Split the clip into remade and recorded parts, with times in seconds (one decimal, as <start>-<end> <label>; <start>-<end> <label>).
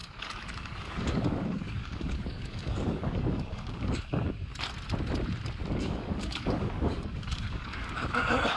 0.0-4.5 remade; 4.5-5.7 recorded; 5.7-8.6 remade